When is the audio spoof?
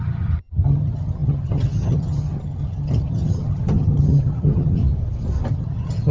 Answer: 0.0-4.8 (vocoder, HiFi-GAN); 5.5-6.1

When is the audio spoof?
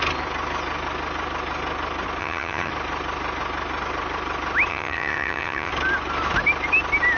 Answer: 2.2-2.7 (vocoder, HiFi-GAN); 4.7-5.7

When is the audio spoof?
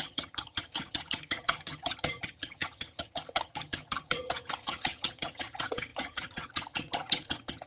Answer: 0.0-7.7 (vocoder, HiFi-GAN)